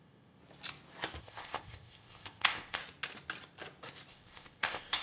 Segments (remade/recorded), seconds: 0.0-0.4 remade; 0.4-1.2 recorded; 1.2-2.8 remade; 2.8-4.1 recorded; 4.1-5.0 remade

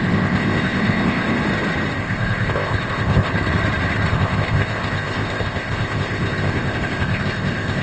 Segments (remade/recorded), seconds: 0.0-1.4 remade; 1.4-2.0 recorded; 2.0-3.3 remade; 3.3-4.1 recorded; 4.1-7.8 remade

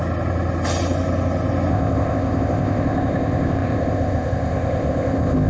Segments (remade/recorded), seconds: 0.0-1.7 recorded; 1.7-5.5 remade

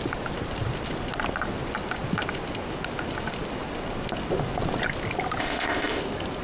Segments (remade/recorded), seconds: 0.0-5.4 recorded; 5.4-6.0 remade; 6.0-6.4 recorded

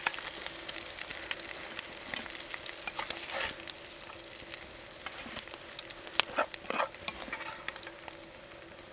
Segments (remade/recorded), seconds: 0.0-8.9 recorded

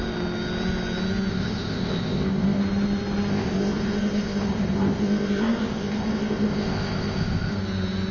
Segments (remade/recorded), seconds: 0.0-1.3 recorded; 1.3-2.6 remade; 2.6-3.3 recorded; 3.3-7.5 remade; 7.5-8.1 recorded

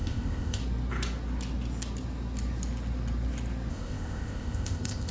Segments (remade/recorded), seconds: 0.0-0.6 remade; 0.6-3.7 recorded; 3.7-5.1 remade